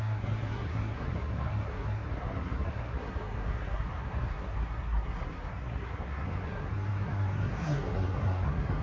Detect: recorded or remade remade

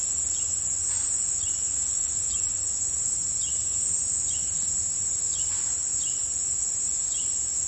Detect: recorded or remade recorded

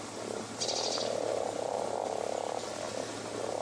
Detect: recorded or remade recorded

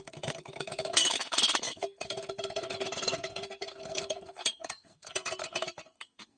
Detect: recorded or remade remade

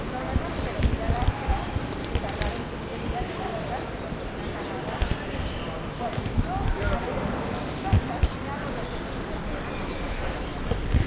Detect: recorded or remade recorded